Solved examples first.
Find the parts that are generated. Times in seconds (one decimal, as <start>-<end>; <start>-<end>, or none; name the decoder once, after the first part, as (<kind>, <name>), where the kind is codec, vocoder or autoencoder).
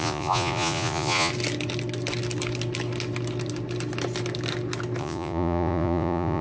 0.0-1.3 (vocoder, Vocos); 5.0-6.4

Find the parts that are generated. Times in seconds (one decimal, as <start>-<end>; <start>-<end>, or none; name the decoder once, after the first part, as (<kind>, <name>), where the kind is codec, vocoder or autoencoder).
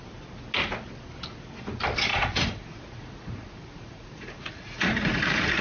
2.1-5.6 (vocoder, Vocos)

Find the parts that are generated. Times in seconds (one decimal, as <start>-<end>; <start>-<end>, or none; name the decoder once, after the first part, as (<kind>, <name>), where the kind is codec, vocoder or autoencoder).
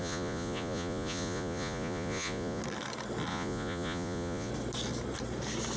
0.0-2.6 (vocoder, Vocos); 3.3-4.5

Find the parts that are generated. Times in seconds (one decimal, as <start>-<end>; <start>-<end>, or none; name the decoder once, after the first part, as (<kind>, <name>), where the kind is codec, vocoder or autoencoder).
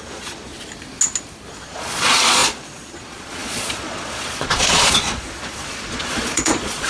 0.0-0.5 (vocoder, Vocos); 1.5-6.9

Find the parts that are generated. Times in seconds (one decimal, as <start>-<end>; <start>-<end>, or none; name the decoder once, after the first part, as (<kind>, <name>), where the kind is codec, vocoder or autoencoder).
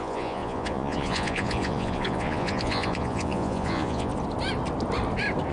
0.0-4.1 (vocoder, Vocos)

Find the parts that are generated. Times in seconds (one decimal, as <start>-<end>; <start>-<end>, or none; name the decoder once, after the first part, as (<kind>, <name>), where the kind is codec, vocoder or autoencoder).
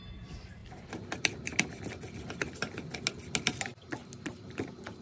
none